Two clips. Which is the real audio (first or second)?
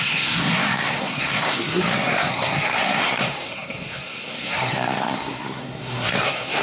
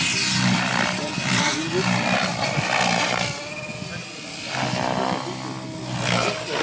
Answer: second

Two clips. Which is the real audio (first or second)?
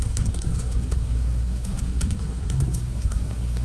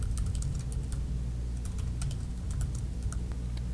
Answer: second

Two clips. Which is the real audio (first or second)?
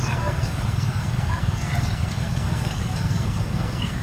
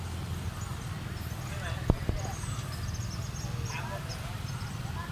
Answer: second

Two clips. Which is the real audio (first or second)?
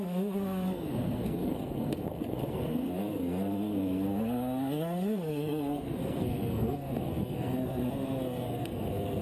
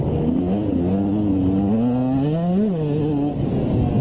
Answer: second